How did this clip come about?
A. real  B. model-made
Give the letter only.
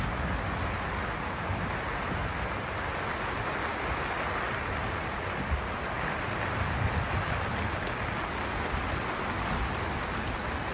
A